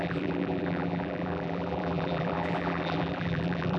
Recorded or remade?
remade